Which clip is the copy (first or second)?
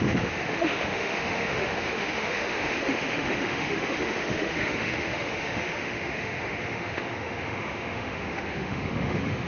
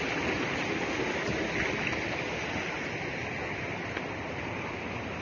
first